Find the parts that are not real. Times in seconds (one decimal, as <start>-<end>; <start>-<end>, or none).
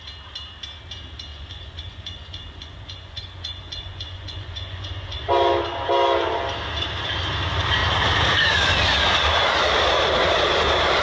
1.3-5.2